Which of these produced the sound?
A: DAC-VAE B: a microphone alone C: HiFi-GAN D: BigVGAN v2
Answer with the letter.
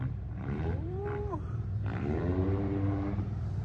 D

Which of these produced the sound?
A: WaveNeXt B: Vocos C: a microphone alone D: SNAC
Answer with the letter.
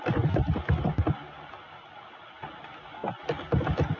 C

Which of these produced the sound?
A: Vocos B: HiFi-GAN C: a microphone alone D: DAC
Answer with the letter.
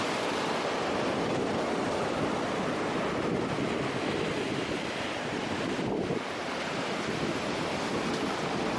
C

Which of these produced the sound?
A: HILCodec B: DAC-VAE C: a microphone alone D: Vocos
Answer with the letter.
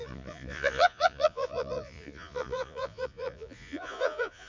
D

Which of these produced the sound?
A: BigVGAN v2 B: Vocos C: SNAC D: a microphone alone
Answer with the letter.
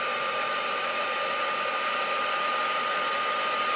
D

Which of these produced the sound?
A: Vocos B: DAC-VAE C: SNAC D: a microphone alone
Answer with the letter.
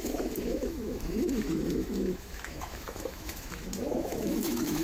B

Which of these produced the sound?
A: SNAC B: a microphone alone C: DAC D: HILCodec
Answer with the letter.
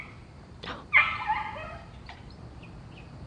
B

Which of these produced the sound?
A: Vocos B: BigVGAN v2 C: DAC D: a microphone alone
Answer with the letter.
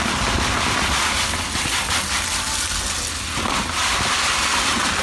D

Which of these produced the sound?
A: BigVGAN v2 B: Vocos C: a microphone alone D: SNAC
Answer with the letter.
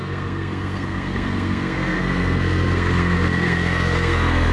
D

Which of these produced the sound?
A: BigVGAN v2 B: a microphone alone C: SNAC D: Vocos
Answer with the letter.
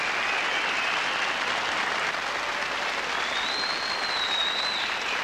B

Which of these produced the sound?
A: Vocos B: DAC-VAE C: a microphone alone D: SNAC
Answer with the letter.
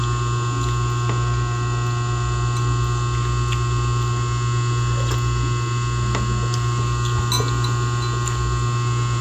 C